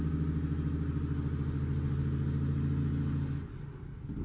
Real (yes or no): yes